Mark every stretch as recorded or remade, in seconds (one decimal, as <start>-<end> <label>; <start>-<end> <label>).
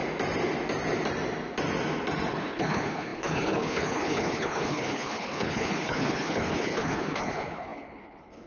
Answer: 0.0-2.3 recorded; 2.3-8.5 remade